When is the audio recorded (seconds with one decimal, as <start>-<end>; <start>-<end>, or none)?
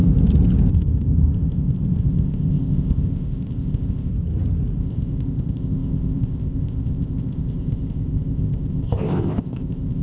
0.0-0.7; 4.1-4.8